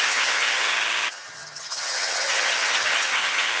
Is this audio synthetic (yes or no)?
yes